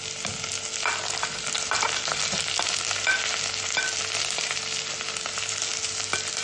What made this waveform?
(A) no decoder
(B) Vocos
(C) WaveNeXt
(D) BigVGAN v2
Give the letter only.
A